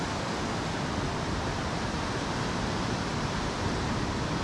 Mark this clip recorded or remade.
recorded